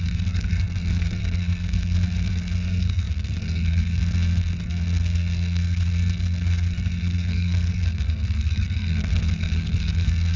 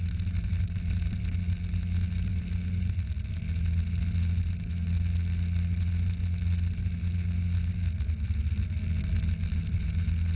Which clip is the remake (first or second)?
first